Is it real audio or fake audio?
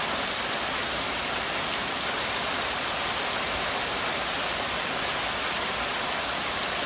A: real